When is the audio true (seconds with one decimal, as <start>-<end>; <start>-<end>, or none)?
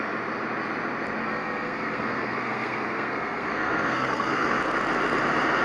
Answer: 0.0-1.2; 4.6-5.6